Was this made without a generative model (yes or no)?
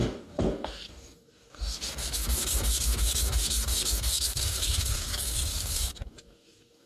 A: no